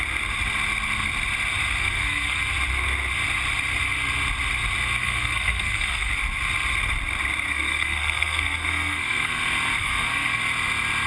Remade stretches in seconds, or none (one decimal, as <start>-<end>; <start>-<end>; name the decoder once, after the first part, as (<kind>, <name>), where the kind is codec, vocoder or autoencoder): 1.8-2.4 (codec, SNAC); 5.0-6.1; 7.5-9.4; 9.8-10.4